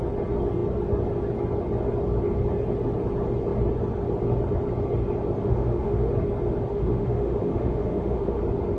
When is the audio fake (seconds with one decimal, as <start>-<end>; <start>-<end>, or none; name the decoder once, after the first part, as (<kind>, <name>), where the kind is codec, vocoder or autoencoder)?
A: 5.4-6.1 (autoencoder, DAC-VAE); 6.7-8.4